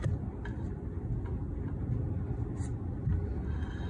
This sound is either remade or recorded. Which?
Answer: recorded